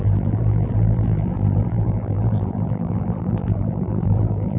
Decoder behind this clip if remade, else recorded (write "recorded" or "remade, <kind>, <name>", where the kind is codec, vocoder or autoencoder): remade, vocoder, BigVGAN v2